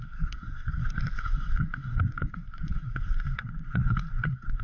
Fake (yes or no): yes